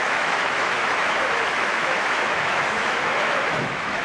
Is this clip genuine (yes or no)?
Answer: no